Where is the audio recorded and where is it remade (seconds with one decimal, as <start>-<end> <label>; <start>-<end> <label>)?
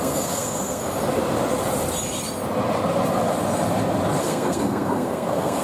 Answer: 0.0-0.8 remade; 0.8-4.2 recorded; 4.2-5.6 remade